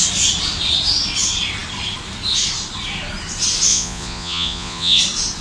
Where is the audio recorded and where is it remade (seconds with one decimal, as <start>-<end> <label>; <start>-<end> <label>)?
0.0-3.7 recorded; 3.7-5.0 remade; 5.0-5.4 recorded